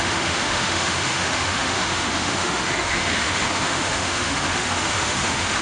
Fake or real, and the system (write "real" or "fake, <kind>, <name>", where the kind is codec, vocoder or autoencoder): fake, autoencoder, DAC-VAE